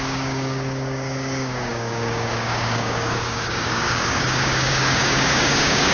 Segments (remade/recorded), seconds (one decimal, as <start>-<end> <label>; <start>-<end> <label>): 0.0-5.9 remade